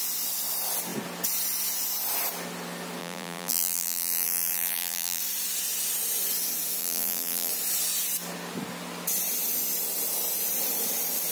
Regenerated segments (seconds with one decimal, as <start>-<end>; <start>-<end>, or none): 3.0-5.2; 6.8-7.5